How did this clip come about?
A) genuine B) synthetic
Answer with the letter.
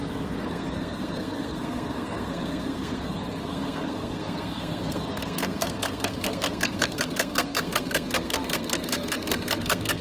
B